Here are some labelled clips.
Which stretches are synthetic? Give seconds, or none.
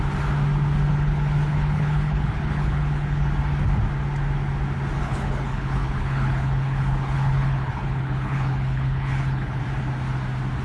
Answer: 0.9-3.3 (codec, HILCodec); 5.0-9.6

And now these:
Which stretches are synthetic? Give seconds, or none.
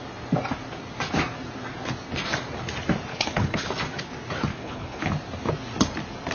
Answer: 3.1-3.7 (codec, HILCodec); 4.5-5.1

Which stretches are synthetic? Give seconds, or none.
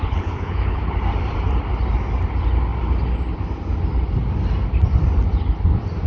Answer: 0.0-0.9 (codec, HILCodec)